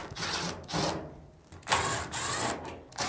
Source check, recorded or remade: recorded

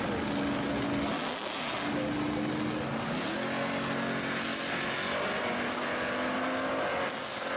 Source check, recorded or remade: recorded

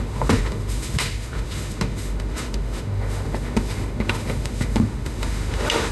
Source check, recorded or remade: remade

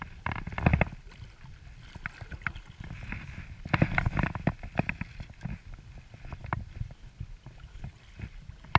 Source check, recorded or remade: recorded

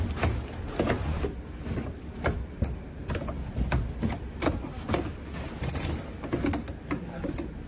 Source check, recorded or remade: recorded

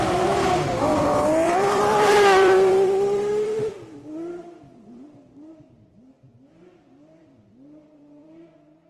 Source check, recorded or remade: remade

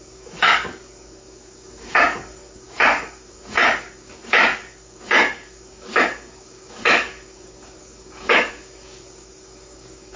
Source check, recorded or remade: remade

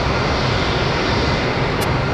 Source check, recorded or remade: recorded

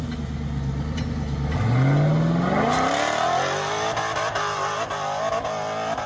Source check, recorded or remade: recorded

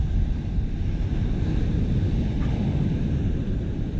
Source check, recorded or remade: recorded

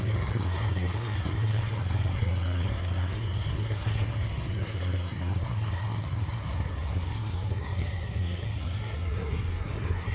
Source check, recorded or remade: remade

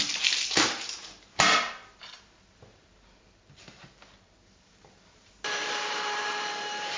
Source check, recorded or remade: remade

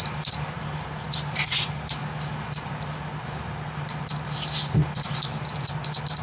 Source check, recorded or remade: recorded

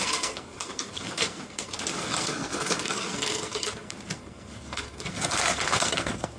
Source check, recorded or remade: remade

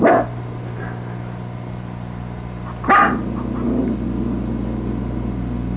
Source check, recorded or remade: recorded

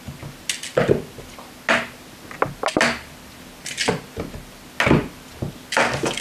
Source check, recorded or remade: recorded